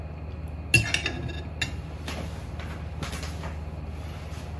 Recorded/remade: recorded